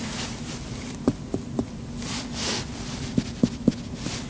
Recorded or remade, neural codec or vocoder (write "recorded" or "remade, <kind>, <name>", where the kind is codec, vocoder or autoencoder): recorded